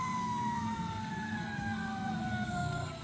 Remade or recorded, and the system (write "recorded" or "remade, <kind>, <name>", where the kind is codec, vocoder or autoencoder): remade, codec, SNAC